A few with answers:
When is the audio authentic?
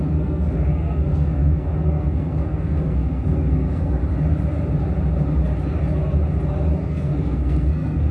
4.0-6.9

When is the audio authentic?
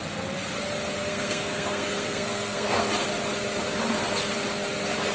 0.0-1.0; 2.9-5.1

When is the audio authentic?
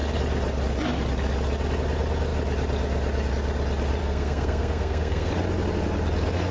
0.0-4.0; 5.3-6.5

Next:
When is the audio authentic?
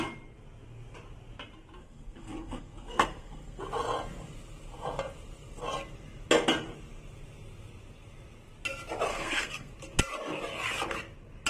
0.0-1.8; 3.6-9.1; 9.7-11.5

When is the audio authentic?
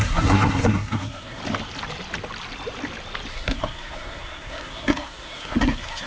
1.4-3.3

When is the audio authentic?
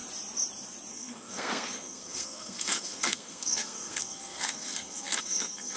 0.0-0.9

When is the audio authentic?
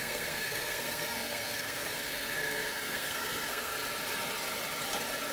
3.7-5.3